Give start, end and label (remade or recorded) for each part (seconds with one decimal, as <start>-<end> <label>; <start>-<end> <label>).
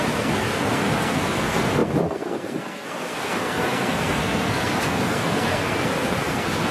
0.0-6.7 remade